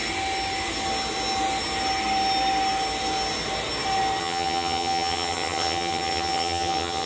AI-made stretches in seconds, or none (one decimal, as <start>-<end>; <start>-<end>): 4.2-7.1